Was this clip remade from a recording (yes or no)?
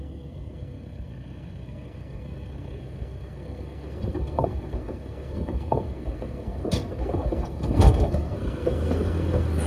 yes